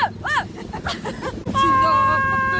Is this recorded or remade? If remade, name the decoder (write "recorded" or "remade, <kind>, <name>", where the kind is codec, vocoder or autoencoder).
recorded